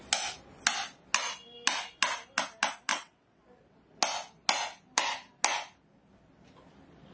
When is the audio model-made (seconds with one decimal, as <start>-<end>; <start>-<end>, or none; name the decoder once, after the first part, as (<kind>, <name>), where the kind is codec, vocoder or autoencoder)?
2.9-3.4 (vocoder, WaveNeXt)